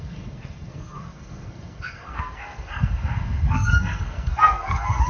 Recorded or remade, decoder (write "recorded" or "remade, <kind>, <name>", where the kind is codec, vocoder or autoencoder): remade, codec, SNAC